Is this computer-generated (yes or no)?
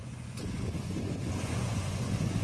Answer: yes